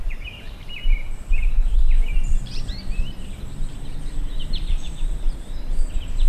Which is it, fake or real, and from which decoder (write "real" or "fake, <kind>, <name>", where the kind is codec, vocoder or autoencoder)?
fake, vocoder, BigVGAN v2